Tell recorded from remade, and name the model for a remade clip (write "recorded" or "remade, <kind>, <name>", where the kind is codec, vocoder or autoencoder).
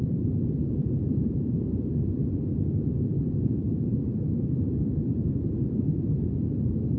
remade, vocoder, BigVGAN v2